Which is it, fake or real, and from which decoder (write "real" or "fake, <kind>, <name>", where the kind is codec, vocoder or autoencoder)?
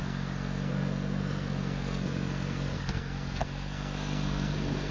fake, codec, SNAC